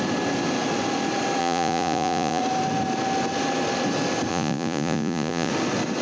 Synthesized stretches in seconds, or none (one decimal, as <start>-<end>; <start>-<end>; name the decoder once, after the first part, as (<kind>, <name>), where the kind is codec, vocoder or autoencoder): 1.4-2.4 (vocoder, Vocos); 4.3-5.5